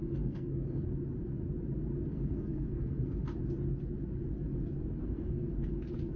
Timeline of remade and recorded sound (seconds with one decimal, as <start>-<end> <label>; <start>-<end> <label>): 0.0-0.8 remade; 0.8-2.1 recorded; 2.1-3.2 remade; 3.2-5.0 recorded; 5.0-6.2 remade